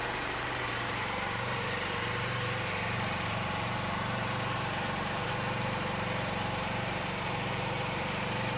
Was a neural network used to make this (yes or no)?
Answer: yes